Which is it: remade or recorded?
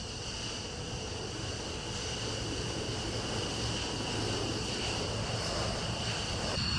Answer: recorded